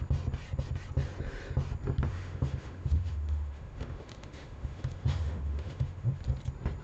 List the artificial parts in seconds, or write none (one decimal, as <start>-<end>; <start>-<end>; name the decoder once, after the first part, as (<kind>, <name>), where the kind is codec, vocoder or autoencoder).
2.1-6.2 (autoencoder, DAC-VAE)